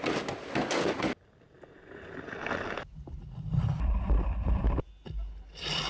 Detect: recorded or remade recorded